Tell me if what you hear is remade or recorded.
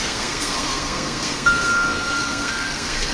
remade